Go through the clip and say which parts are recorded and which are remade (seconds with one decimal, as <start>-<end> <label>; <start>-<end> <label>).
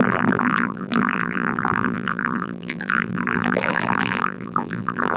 0.0-5.2 remade